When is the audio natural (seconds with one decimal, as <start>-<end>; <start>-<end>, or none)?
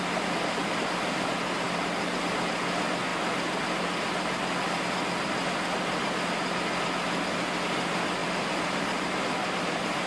0.0-8.2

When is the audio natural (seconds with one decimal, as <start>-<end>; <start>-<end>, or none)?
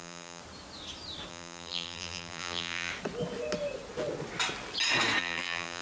0.4-1.3; 2.9-5.2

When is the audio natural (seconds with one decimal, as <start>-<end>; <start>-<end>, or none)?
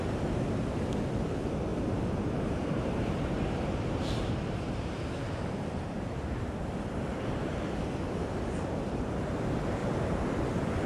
0.0-1.7; 6.6-9.8; 10.3-10.9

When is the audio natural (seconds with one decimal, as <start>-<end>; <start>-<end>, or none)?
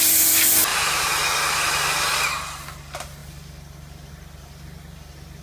0.0-0.7; 1.2-5.4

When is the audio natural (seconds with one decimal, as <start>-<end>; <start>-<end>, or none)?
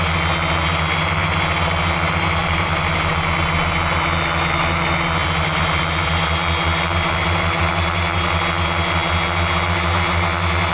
0.0-2.4; 3.1-5.2; 7.6-10.7